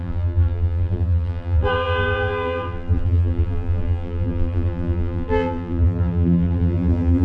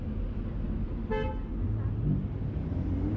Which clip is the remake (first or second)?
first